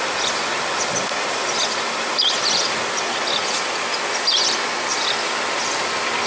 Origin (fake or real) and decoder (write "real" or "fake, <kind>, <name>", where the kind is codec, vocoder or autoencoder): real